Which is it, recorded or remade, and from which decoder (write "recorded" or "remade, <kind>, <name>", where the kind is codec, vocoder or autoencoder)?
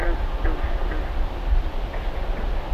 recorded